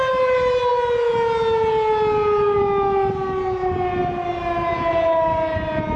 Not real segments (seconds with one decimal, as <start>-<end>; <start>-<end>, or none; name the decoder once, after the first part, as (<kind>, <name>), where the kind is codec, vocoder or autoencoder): none